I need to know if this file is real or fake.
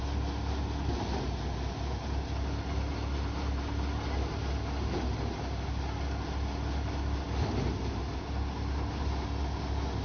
real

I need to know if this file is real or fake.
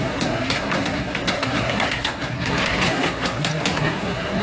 fake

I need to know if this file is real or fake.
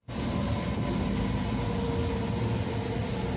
real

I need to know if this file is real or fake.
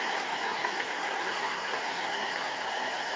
fake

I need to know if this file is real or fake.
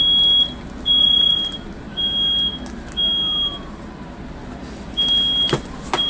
real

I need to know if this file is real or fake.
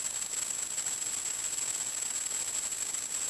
real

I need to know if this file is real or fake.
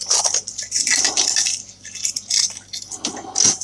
real